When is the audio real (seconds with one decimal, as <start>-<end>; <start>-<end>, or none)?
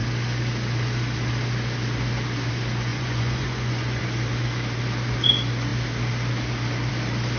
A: 0.0-2.9; 4.0-7.4